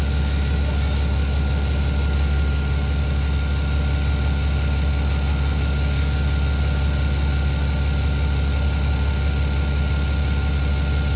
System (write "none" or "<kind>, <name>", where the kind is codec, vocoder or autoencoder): none